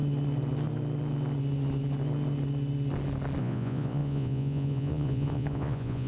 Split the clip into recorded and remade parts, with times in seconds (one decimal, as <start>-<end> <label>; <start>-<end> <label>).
0.0-3.4 recorded; 3.4-6.1 remade